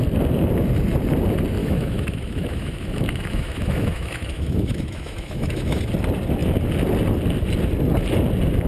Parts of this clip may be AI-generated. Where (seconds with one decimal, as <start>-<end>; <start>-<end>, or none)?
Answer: 1.6-5.8